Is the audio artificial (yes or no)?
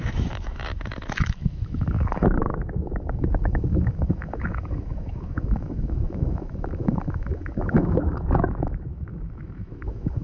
yes